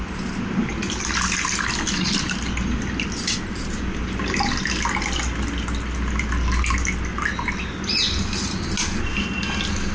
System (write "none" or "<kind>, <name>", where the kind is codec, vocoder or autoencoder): none